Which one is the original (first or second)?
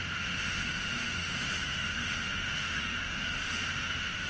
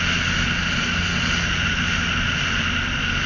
second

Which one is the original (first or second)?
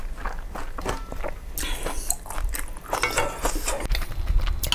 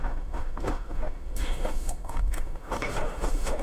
first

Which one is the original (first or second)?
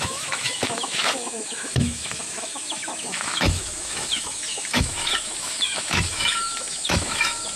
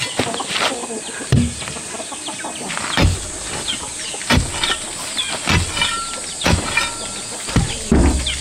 second